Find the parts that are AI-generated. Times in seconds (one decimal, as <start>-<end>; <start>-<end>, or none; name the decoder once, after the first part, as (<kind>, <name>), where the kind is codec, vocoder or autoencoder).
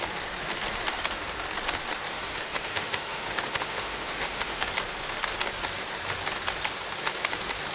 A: 2.1-4.7 (autoencoder, DAC-VAE)